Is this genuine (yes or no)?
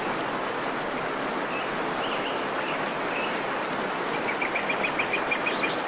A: yes